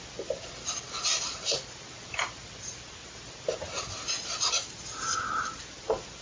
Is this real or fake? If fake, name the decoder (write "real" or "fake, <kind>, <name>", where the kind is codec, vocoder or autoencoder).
real